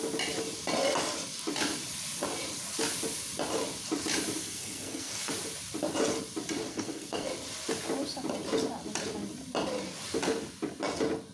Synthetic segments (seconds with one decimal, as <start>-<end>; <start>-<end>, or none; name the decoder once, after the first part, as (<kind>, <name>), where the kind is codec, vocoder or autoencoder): 4.4-5.3 (codec, SNAC); 6.7-7.3